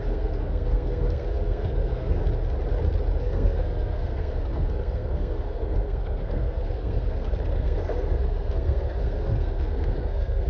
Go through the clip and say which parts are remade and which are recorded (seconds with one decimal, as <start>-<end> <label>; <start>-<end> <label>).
0.0-2.2 remade; 2.2-3.2 recorded; 3.2-10.5 remade